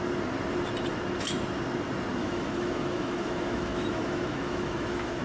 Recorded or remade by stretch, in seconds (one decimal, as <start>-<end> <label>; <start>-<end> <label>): 0.0-2.2 recorded; 2.2-5.2 remade